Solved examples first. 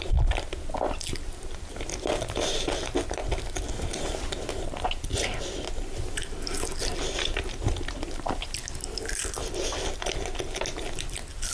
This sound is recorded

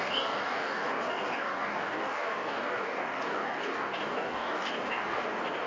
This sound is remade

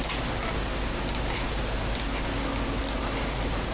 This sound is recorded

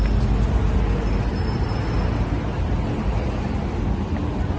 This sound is recorded